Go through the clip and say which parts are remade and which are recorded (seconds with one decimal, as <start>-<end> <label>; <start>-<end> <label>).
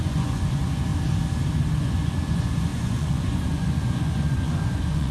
0.0-0.9 remade; 0.9-1.8 recorded; 1.8-5.1 remade